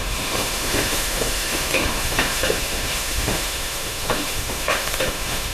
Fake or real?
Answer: fake